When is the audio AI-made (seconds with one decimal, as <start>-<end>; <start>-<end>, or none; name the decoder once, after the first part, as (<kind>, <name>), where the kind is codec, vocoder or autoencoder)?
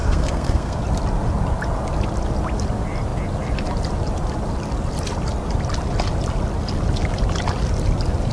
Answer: 0.0-0.8 (codec, SNAC)